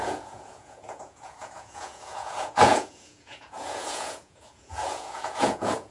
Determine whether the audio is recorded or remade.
remade